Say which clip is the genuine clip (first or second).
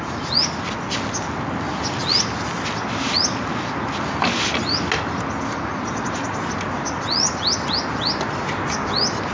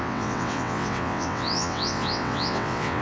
first